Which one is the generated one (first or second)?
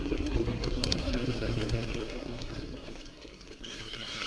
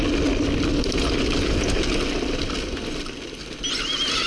first